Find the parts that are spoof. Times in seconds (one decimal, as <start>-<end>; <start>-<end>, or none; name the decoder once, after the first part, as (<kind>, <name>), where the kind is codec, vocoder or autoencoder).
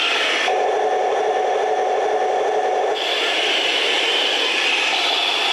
1.1-1.7 (vocoder, BigVGAN v2)